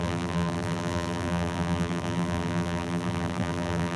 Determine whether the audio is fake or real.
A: fake